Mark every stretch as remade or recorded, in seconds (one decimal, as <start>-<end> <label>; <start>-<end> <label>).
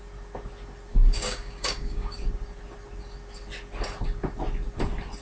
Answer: 0.0-0.9 recorded; 0.9-2.2 remade; 2.2-5.2 recorded